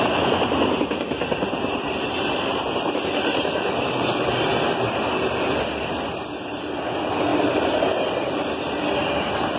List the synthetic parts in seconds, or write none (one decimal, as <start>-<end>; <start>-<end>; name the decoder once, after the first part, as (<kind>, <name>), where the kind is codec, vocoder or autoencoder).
none